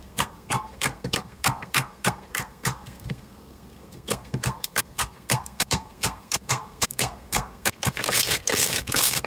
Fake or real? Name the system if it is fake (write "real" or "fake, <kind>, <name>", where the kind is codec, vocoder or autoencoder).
fake, codec, SNAC